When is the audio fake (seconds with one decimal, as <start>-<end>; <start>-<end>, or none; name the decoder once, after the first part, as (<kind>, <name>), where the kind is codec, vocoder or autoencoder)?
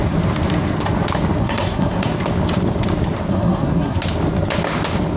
1.4-2.2 (codec, SNAC); 3.3-4.0